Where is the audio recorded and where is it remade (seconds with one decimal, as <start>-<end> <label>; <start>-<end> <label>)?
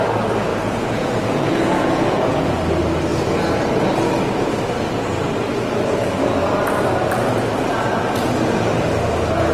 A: 0.0-0.5 recorded; 0.5-2.6 remade; 2.6-9.5 recorded